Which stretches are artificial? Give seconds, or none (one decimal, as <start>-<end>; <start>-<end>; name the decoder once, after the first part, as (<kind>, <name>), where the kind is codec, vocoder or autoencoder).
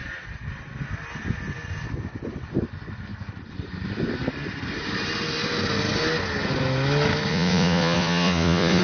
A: 7.3-8.8 (vocoder, Vocos)